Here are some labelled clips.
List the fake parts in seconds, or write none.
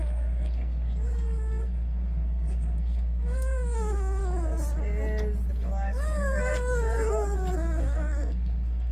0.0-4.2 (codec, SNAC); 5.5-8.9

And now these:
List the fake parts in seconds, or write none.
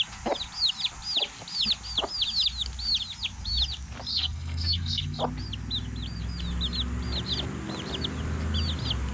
4.1-5.2 (codec, SNAC)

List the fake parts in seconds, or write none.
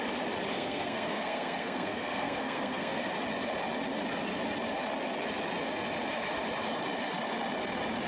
0.5-3.1 (codec, SNAC)